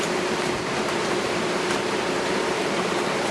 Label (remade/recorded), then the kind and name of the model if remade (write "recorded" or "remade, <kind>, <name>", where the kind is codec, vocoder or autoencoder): remade, vocoder, BigVGAN v2